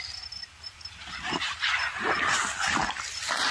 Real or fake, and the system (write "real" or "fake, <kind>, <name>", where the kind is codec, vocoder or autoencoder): real